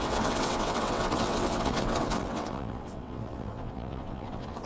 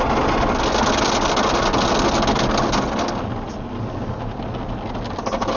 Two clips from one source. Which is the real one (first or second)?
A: second